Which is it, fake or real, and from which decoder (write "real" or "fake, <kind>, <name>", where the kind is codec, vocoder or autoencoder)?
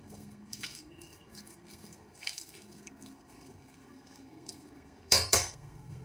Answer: fake, codec, SNAC